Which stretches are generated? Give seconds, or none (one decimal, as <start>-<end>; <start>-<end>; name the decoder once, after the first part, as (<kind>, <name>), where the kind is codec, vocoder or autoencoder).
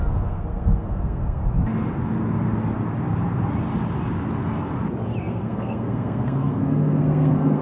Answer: 0.0-1.4 (codec, SNAC); 5.2-7.6